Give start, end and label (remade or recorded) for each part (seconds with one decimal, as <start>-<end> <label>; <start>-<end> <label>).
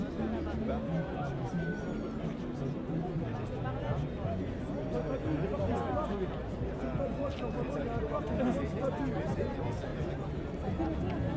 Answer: 0.0-6.4 recorded; 6.4-8.3 remade; 8.3-11.4 recorded